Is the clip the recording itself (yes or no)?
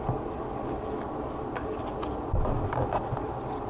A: yes